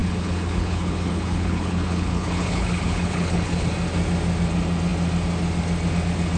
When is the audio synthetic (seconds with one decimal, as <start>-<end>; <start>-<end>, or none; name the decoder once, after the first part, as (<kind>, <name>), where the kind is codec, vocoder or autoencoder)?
0.0-3.7 (codec, HILCodec)